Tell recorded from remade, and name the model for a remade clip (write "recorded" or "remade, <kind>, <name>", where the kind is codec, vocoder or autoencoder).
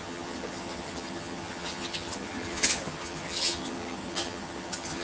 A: remade, vocoder, HiFi-GAN